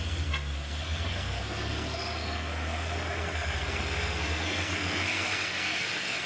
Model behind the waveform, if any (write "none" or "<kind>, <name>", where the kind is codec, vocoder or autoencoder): codec, SNAC